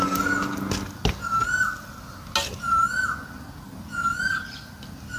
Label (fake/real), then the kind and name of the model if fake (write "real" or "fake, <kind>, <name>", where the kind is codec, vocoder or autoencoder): real